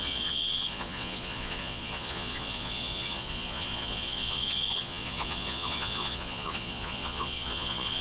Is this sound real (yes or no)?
no